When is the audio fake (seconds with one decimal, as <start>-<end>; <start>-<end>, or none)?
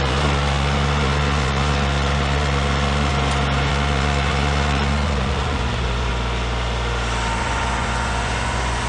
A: 0.0-3.1; 3.7-6.1; 7.4-8.9